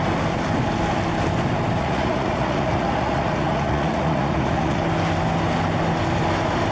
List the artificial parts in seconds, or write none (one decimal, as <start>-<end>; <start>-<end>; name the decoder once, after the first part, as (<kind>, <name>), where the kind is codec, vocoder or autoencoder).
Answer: 1.8-4.8 (vocoder, Vocos)